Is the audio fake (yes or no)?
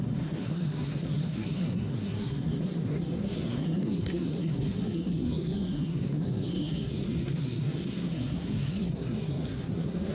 yes